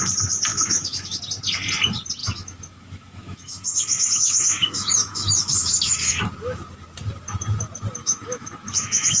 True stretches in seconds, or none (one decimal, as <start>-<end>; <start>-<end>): 0.0-0.5; 1.2-2.2; 6.3-8.0